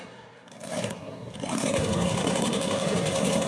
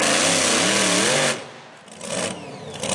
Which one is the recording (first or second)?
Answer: second